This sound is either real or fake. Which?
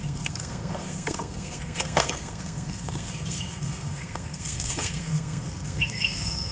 fake